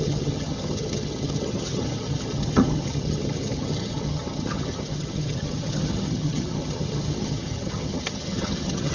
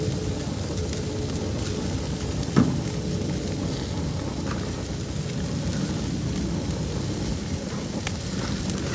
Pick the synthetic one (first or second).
first